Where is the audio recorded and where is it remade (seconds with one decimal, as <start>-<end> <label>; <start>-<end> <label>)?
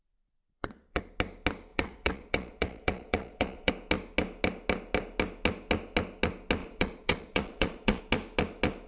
0.0-1.0 remade; 1.0-1.7 recorded; 1.7-3.7 remade; 3.7-6.6 recorded; 6.6-8.0 remade; 8.0-8.9 recorded